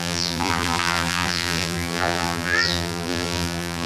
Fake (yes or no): yes